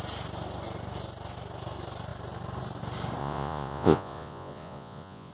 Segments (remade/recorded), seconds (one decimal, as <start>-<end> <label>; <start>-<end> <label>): 0.0-3.2 recorded; 3.2-5.3 remade